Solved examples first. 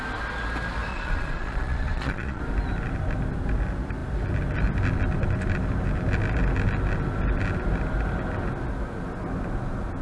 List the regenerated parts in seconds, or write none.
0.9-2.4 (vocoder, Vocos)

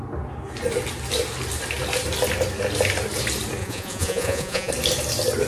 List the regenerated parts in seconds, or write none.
3.6-4.7 (vocoder, Vocos)

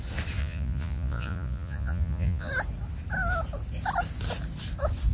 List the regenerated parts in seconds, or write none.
0.4-2.5 (vocoder, Vocos)

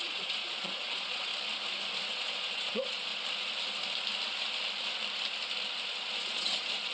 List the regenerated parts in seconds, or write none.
0.0-1.3 (vocoder, Vocos); 2.1-3.1; 6.1-6.9

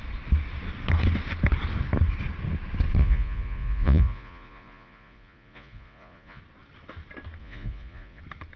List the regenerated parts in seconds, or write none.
3.0-6.4 (vocoder, Vocos); 7.4-8.2

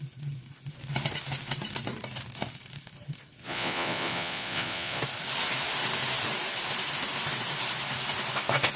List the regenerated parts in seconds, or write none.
3.4-5.0 (vocoder, Vocos)